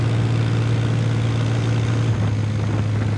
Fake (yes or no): no